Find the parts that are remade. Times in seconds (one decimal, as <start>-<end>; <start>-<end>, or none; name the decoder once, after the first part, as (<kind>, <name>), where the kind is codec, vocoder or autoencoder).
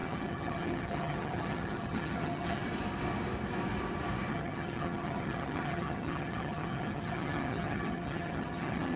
0.0-2.6 (vocoder, HiFi-GAN); 4.3-9.0